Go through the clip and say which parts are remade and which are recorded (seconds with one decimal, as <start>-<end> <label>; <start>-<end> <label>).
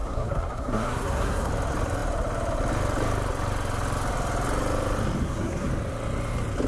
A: 0.0-1.5 remade; 1.5-5.2 recorded; 5.2-5.7 remade; 5.7-6.7 recorded